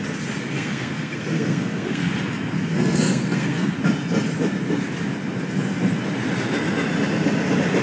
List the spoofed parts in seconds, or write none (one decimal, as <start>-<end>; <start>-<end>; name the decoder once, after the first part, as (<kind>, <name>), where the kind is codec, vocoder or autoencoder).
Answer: 0.4-2.1 (codec, SNAC); 2.7-3.7

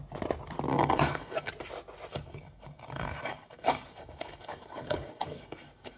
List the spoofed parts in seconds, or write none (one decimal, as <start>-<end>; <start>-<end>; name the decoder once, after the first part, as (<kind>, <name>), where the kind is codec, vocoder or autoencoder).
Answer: 0.7-1.5 (codec, DAC); 2.1-6.0